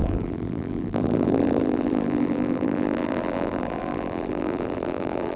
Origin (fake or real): fake